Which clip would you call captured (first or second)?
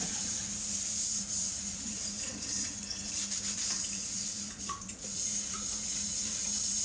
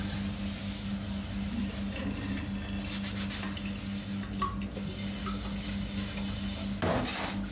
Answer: second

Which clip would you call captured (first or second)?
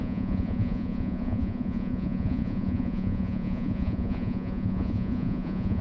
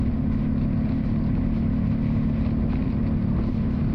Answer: second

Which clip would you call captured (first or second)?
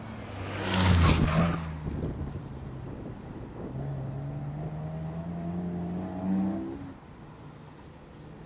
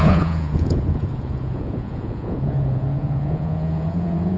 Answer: first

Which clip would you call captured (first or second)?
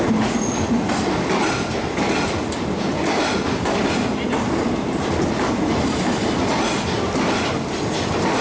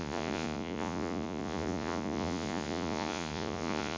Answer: first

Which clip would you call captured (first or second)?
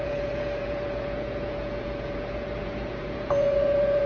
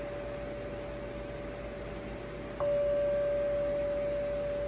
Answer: second